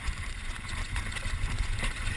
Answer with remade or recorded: remade